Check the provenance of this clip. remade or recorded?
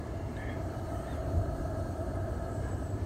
remade